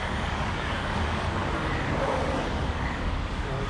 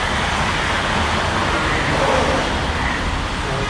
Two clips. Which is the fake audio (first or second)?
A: first